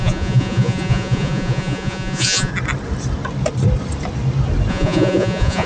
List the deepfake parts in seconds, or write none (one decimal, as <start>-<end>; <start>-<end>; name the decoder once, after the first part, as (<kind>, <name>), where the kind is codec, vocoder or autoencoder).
0.0-2.5 (vocoder, Vocos); 4.7-5.7